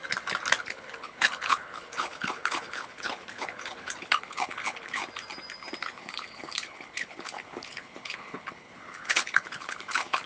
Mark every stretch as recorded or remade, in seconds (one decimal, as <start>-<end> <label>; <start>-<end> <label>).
0.0-0.6 recorded; 0.6-5.0 remade; 5.0-5.8 recorded; 5.8-10.3 remade